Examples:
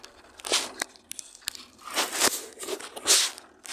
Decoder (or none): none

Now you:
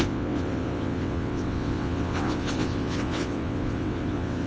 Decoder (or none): vocoder, WaveNeXt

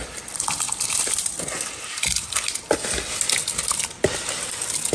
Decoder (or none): none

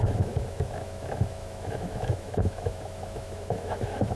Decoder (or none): autoencoder, DAC-VAE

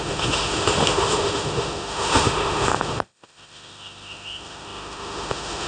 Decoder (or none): autoencoder, DAC-VAE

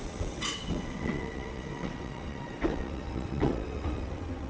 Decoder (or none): vocoder, WaveNeXt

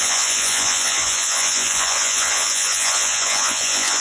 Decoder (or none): vocoder, Vocos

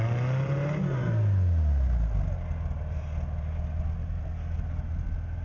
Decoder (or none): none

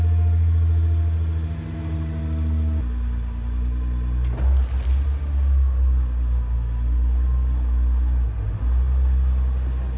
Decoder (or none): none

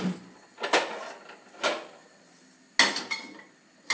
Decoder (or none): none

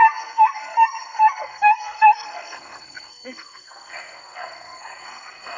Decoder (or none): codec, SNAC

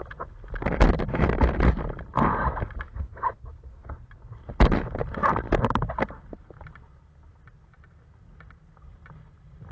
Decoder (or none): none